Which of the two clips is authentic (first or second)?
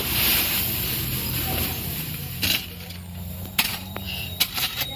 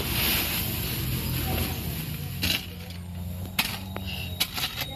second